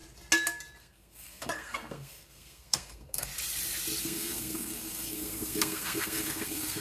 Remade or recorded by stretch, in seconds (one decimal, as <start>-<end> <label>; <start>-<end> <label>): 0.0-0.8 recorded; 0.8-3.3 remade; 3.3-4.0 recorded; 4.0-6.8 remade